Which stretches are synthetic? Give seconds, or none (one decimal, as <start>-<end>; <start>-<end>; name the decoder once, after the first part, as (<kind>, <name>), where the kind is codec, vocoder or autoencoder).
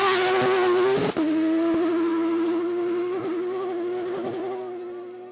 none